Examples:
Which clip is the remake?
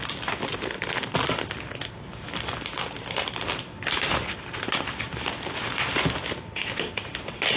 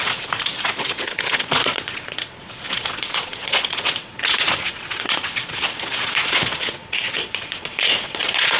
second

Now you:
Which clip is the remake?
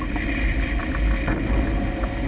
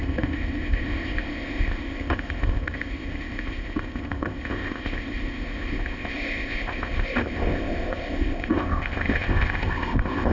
second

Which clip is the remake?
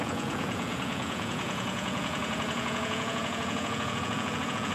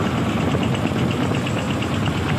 first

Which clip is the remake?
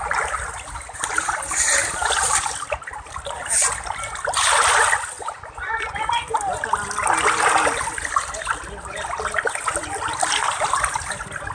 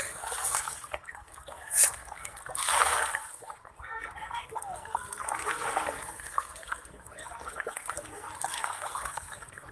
second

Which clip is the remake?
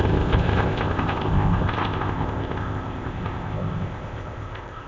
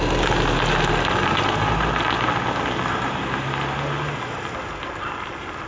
first